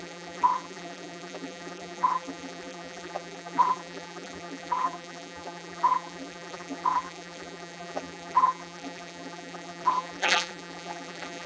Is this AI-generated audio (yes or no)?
yes